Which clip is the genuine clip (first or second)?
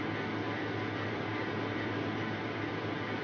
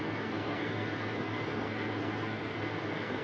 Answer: first